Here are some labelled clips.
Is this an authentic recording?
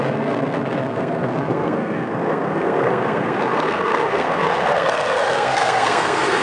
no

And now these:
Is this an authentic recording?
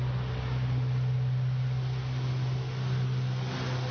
yes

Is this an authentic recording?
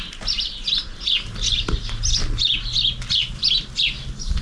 yes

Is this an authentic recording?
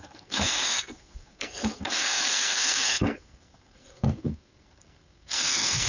no